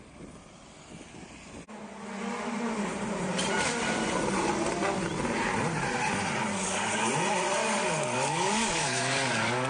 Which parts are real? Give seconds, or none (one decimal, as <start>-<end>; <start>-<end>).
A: 0.0-6.5; 7.1-7.6